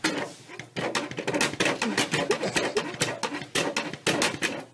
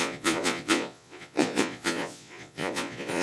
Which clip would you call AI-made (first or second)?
second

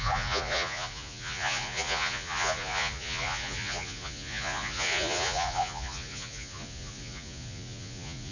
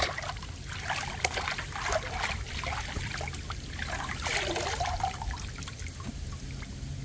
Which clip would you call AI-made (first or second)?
first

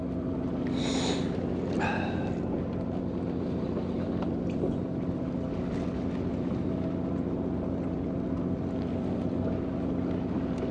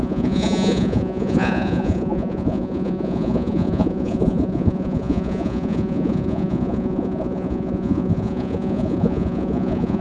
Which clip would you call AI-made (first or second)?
second